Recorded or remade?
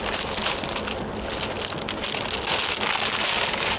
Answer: recorded